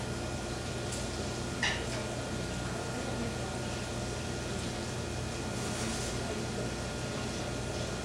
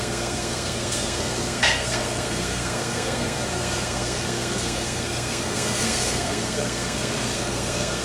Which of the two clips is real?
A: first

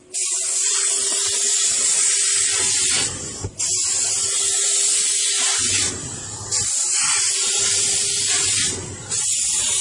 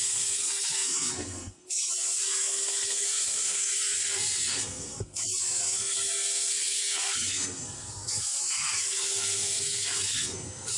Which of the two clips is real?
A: first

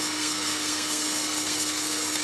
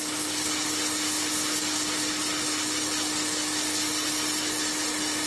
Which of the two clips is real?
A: second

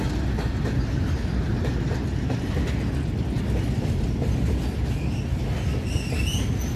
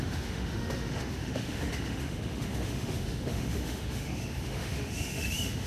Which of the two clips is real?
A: first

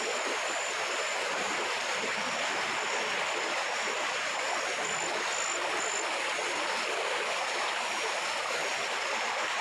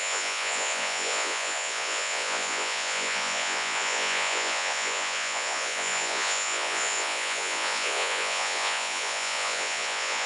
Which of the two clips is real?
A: first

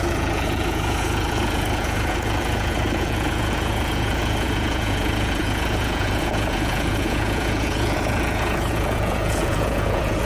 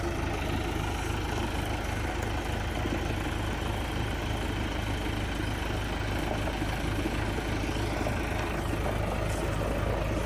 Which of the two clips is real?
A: second